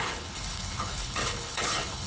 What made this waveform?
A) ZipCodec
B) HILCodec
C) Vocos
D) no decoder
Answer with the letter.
B